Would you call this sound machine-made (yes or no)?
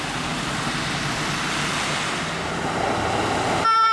no